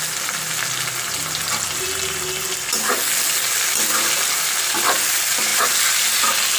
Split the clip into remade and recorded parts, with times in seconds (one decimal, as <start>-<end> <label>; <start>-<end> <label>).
0.0-6.6 recorded